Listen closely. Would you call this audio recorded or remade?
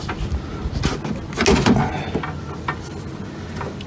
recorded